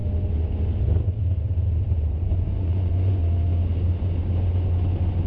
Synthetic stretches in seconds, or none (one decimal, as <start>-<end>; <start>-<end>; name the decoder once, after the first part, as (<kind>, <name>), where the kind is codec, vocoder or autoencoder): 1.9-3.2 (vocoder, Vocos)